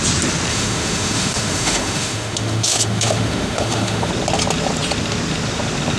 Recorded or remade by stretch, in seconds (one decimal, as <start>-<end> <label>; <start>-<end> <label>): 0.0-0.5 recorded; 0.5-4.1 remade; 4.1-6.0 recorded